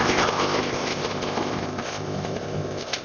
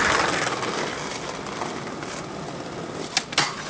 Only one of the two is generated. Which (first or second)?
first